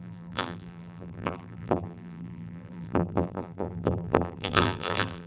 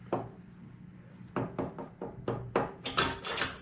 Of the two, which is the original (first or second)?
second